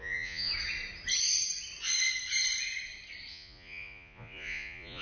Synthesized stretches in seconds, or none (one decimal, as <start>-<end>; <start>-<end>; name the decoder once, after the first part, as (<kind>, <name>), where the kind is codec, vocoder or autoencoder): 0.0-0.5 (vocoder, Vocos); 3.3-5.0